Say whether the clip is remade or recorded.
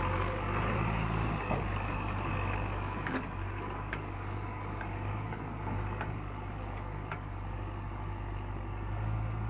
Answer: remade